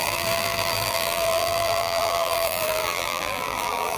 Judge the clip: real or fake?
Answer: fake